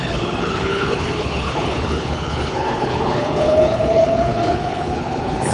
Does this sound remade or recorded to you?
remade